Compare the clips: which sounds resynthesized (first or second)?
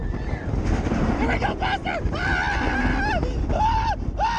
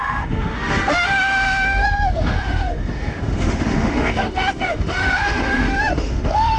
second